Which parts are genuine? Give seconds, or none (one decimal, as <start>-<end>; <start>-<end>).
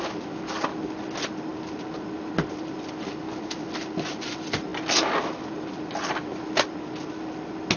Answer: 0.0-7.8